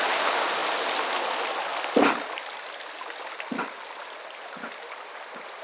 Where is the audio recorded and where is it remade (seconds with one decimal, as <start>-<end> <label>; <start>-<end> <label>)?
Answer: 0.0-5.6 recorded